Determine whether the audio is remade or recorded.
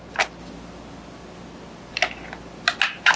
recorded